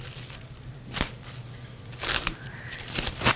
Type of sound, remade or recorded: remade